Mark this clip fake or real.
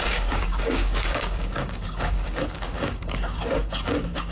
fake